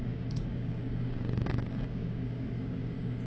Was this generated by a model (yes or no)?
yes